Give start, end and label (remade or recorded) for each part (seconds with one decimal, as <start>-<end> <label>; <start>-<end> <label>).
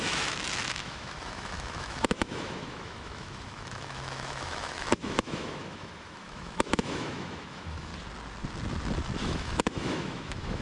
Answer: 0.0-7.9 remade; 7.9-9.2 recorded; 9.2-10.6 remade